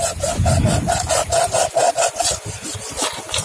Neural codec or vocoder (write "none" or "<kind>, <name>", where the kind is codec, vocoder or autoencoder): none